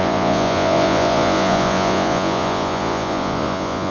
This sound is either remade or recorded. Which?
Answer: remade